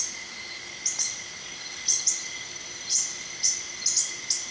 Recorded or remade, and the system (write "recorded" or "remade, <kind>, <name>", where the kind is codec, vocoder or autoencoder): recorded